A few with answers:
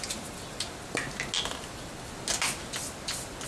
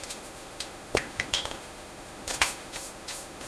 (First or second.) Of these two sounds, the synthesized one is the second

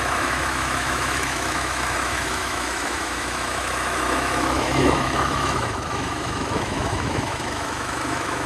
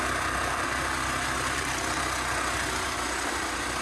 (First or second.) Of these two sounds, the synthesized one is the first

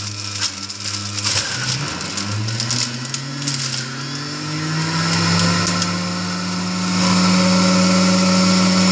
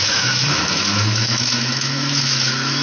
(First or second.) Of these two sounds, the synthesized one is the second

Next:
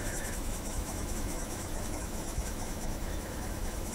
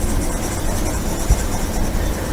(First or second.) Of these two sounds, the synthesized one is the first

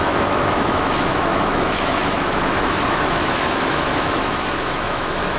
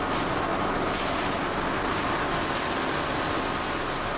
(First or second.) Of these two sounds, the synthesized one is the first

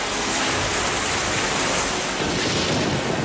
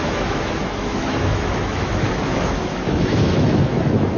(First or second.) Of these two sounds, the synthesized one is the second